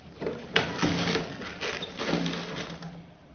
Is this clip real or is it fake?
real